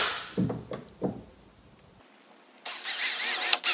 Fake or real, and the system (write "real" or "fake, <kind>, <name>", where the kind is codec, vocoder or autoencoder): real